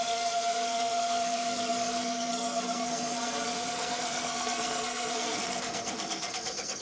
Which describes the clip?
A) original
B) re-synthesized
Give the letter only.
B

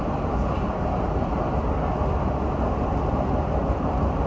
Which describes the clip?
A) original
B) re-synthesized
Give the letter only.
A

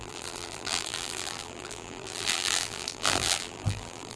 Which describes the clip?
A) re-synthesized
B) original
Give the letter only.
A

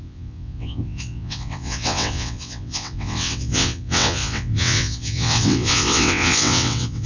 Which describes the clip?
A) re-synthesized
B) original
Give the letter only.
A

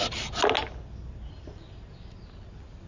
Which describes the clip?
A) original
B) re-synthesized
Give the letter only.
A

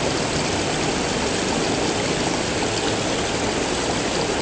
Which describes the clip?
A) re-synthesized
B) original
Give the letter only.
B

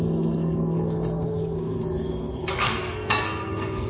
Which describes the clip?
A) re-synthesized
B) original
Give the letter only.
A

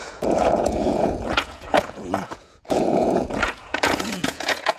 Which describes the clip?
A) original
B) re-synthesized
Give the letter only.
B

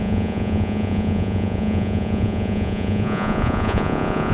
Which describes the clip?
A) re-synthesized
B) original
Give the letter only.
A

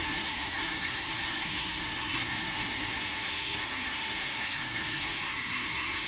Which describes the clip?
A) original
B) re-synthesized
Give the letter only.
B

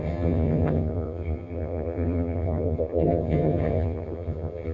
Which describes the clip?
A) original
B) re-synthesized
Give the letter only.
B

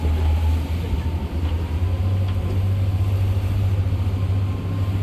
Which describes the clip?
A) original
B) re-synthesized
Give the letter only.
A